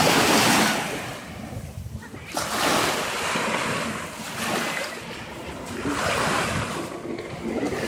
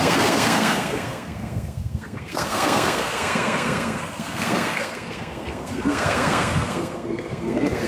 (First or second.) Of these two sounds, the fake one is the second